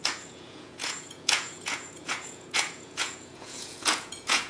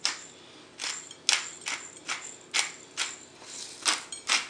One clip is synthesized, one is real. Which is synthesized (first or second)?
first